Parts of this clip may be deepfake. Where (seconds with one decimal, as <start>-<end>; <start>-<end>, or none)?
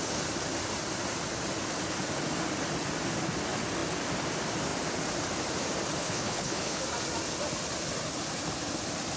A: 6.0-6.8